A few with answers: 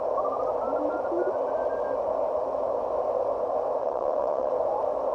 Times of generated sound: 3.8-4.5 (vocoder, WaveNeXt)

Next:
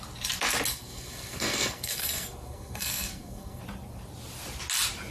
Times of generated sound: 0.7-3.6 (codec, SNAC)

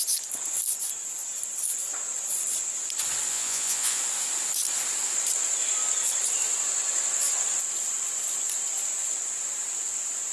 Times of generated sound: 3.3-4.0 (vocoder, Vocos)

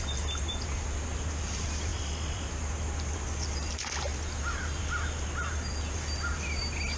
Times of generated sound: 1.9-2.5 (vocoder, BigVGAN v2)